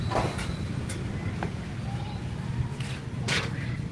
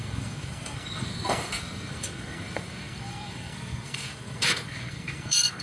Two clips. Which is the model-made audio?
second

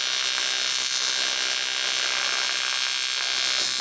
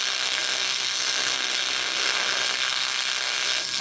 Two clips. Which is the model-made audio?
second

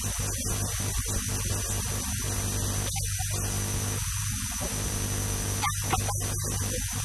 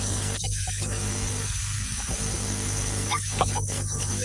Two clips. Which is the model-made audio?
second